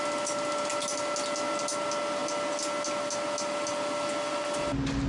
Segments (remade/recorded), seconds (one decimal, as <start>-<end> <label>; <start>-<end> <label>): 0.0-5.1 recorded